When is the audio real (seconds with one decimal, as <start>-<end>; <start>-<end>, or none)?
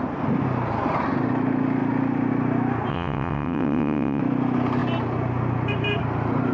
0.0-2.9; 4.2-6.5